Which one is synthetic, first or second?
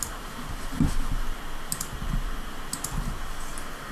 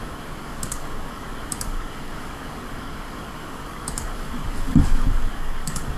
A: second